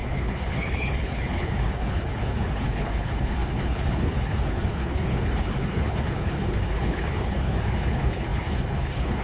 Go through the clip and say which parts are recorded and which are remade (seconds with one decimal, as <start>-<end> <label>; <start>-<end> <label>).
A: 0.0-9.2 remade